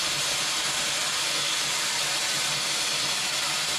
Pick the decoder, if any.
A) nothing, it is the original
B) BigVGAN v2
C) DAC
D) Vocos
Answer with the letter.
A